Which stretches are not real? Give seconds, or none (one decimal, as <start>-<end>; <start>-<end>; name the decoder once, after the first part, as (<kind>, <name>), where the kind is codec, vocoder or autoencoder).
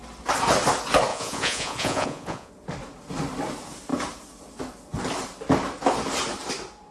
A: 1.1-2.5 (vocoder, Vocos)